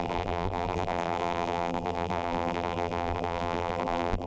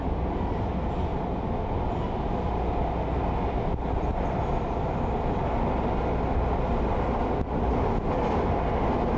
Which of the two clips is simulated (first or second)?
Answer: first